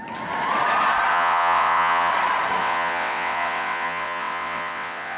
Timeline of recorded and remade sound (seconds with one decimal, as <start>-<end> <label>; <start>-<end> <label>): 0.0-1.1 recorded; 1.1-2.1 remade; 2.1-2.6 recorded; 2.6-5.2 remade